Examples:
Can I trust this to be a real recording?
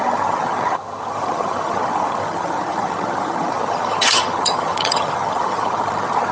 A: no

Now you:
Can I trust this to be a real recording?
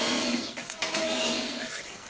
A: no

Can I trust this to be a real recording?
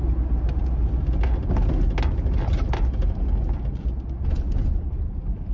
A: yes